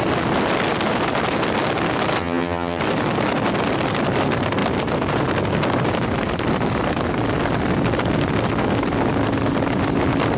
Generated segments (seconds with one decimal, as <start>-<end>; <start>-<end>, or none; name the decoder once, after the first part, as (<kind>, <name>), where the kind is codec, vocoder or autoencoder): 2.2-2.8 (vocoder, HiFi-GAN)